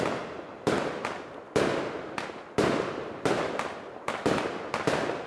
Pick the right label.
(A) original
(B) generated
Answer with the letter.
A